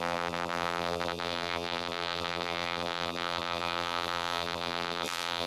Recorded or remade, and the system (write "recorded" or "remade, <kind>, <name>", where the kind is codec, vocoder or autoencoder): remade, vocoder, BigVGAN v2